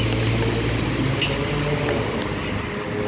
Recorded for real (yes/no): yes